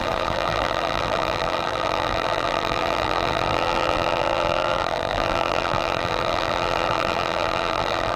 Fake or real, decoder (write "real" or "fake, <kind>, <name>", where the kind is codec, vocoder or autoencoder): fake, vocoder, BigVGAN v2